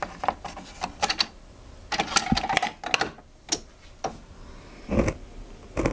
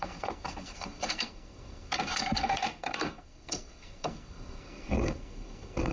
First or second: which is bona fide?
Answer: first